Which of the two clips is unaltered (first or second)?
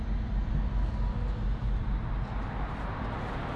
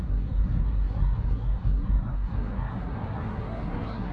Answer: first